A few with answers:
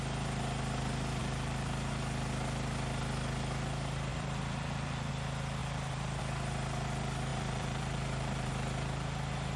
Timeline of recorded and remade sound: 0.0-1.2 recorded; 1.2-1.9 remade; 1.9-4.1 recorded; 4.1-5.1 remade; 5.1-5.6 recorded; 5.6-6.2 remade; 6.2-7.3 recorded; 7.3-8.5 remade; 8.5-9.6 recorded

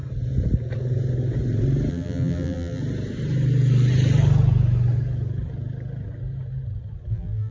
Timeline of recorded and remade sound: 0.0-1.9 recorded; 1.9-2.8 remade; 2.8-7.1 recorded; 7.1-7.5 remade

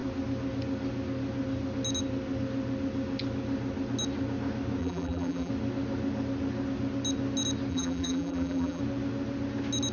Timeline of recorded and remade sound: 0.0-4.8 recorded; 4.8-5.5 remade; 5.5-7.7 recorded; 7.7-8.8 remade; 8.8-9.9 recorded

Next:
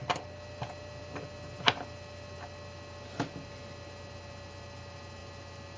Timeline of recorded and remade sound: 0.0-5.8 recorded

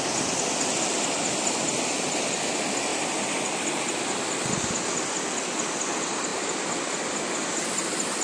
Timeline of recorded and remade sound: 0.0-2.9 recorded; 2.9-5.1 remade; 5.1-6.3 recorded; 6.3-7.2 remade; 7.2-8.2 recorded

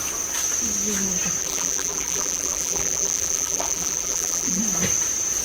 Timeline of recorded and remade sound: 0.0-1.4 recorded; 1.4-4.6 remade; 4.6-5.4 recorded

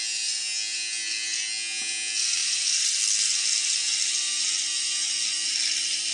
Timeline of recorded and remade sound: 0.0-6.1 recorded

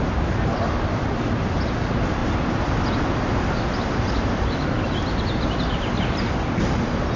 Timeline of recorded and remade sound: 0.0-2.2 recorded; 2.2-3.1 remade; 3.1-7.2 recorded